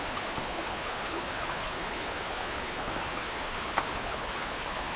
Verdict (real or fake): fake